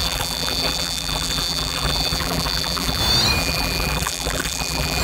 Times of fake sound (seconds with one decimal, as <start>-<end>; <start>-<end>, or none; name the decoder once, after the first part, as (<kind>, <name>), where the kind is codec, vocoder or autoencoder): 0.0-3.0 (vocoder, BigVGAN v2); 3.4-5.0